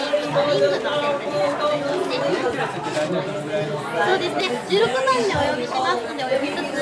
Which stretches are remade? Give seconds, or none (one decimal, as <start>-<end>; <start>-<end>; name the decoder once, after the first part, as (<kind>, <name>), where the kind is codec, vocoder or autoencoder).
none